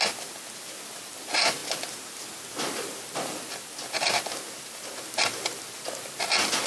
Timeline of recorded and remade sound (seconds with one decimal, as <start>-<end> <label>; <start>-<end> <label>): 0.0-6.7 recorded